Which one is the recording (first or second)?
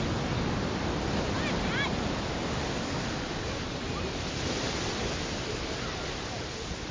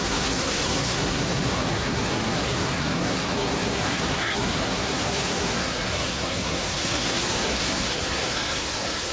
first